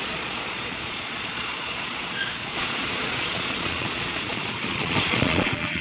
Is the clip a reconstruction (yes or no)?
yes